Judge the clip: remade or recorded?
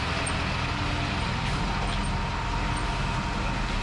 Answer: recorded